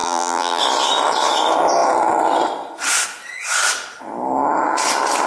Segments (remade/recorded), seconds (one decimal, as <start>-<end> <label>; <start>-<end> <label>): 0.0-0.6 remade; 0.6-5.3 recorded